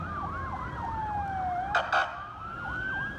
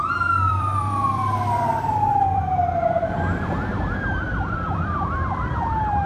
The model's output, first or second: second